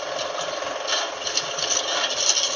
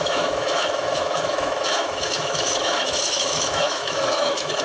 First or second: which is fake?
second